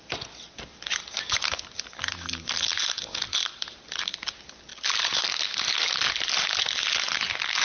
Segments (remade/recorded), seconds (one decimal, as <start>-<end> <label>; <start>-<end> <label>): 0.0-7.6 recorded

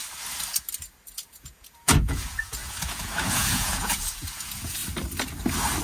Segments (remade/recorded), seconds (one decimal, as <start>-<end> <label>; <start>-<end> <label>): 0.0-1.1 recorded; 1.1-4.8 remade; 4.8-5.8 recorded